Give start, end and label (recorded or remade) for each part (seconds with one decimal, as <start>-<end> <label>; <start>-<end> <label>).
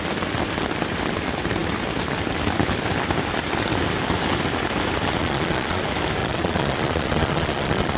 0.0-5.2 recorded; 5.2-5.8 remade; 5.8-6.2 recorded; 6.2-8.0 remade